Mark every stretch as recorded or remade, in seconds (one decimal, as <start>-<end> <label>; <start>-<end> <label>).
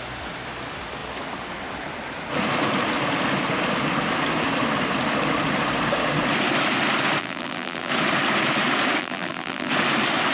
0.0-7.2 recorded; 7.2-7.9 remade; 7.9-9.0 recorded; 9.0-9.7 remade; 9.7-10.3 recorded